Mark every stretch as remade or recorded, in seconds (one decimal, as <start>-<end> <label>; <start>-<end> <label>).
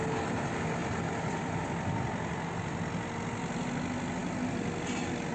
0.0-5.3 recorded